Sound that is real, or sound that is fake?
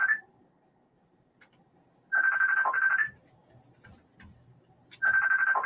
real